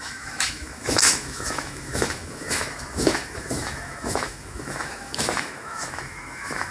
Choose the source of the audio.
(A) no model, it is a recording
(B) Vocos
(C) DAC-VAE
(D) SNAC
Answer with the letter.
C